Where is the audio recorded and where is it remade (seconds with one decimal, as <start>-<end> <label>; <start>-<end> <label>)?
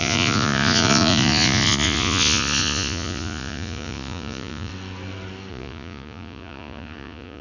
0.0-4.7 remade; 4.7-5.5 recorded; 5.5-7.4 remade